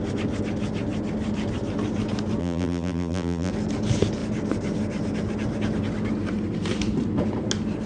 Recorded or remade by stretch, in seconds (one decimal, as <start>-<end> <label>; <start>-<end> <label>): 0.0-2.4 recorded; 2.4-3.5 remade; 3.5-7.9 recorded